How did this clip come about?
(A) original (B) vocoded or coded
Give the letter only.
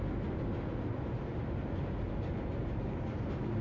A